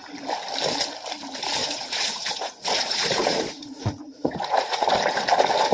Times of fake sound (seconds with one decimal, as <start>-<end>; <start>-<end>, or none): 1.6-4.9

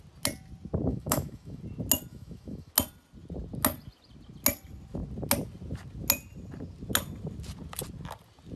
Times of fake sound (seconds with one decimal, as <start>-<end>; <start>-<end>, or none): 0.9-1.6; 2.1-2.7

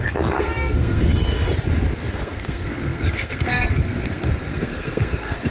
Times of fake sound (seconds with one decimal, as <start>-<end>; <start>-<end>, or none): 0.0-1.1; 2.1-5.5

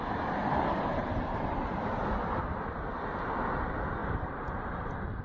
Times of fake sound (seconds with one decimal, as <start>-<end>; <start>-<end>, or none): 0.4-1.8; 4.0-5.2

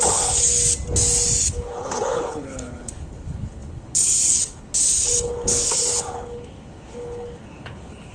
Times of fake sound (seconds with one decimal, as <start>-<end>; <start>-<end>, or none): 0.0-0.5; 1.5-8.1

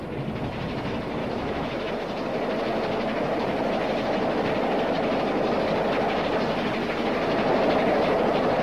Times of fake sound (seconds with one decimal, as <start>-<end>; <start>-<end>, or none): 1.2-1.9

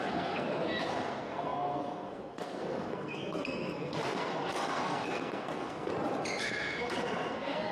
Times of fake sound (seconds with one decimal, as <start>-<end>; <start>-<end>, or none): 0.0-5.9; 6.4-7.7